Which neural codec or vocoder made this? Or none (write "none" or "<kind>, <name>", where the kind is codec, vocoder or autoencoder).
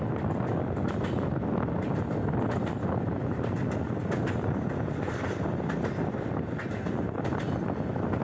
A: none